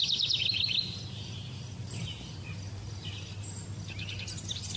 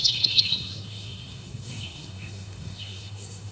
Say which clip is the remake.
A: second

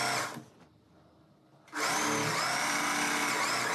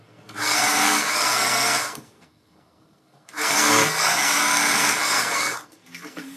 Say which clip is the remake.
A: second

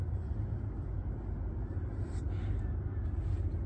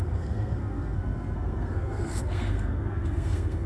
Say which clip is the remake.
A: second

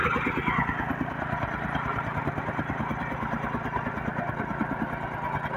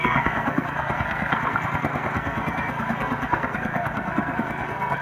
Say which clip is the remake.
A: second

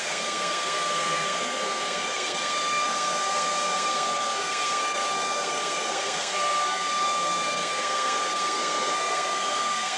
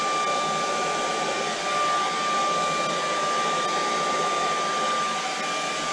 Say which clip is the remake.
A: first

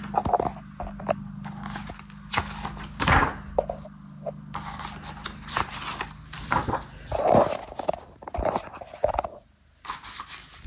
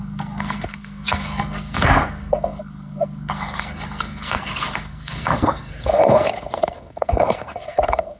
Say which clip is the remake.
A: second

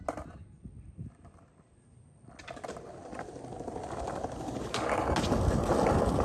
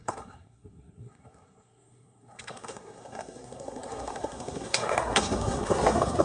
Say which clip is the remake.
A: second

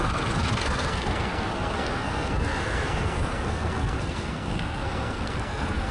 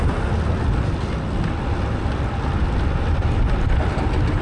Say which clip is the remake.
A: first